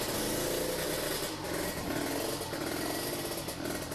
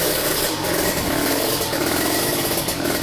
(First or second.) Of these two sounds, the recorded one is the first